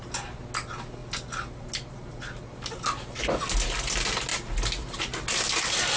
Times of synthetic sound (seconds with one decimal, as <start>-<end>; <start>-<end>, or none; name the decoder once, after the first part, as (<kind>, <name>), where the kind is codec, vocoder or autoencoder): none